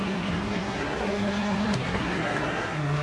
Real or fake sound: fake